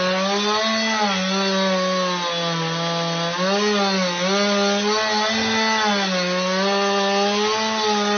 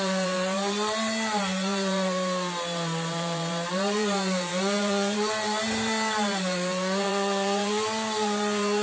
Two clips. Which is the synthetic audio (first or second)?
second